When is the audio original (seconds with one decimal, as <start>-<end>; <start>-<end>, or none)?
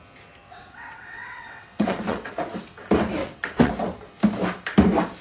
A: 0.0-0.4; 2.4-3.2; 3.7-5.2